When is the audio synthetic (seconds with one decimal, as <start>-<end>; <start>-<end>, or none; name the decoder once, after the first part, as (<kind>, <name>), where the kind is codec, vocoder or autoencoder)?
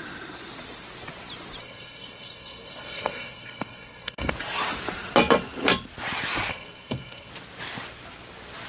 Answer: 1.6-4.3 (codec, SNAC); 6.5-7.3